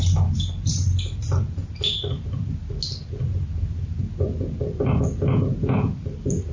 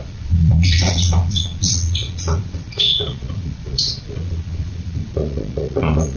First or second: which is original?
first